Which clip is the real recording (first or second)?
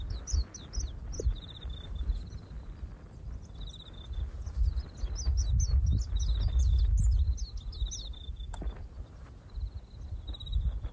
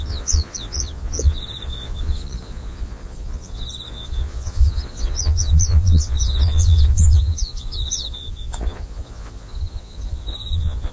first